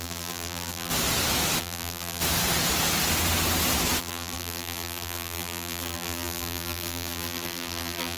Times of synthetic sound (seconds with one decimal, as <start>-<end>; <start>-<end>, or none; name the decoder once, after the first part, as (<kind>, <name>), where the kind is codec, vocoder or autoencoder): 0.0-0.9 (vocoder, BigVGAN v2); 1.6-2.2; 4.0-8.2